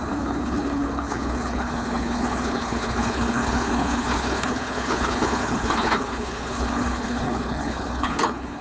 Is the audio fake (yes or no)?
yes